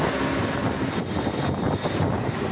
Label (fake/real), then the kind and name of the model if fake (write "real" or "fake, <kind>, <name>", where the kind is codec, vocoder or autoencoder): real